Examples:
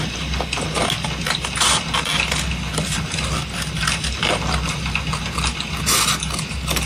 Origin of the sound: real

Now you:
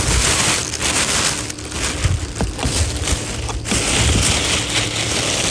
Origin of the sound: real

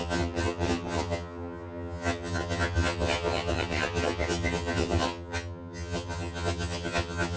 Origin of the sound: fake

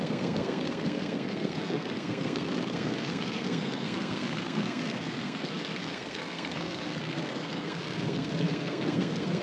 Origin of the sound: fake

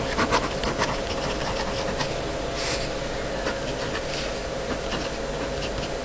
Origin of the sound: real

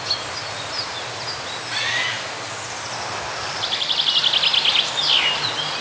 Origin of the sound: real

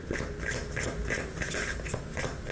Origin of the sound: real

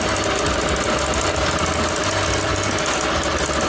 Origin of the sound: real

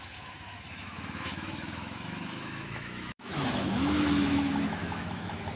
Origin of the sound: fake